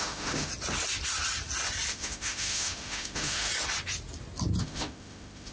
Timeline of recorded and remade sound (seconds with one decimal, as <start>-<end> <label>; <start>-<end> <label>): 0.0-0.5 remade; 0.5-1.9 recorded; 1.9-3.5 remade; 3.5-4.6 recorded; 4.6-5.5 remade